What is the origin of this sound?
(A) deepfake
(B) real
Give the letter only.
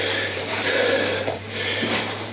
A